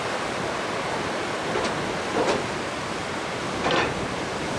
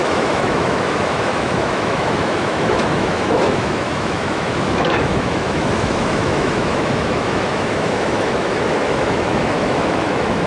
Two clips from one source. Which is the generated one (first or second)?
second